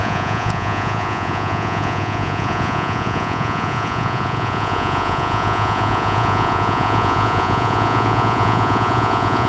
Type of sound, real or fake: fake